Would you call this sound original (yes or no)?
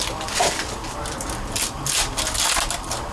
yes